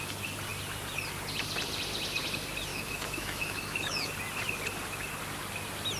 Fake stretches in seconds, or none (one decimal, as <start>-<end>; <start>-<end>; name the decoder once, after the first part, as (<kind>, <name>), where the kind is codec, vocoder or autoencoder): 2.7-4.1 (autoencoder, DAC-VAE)